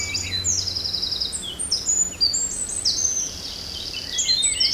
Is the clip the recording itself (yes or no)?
yes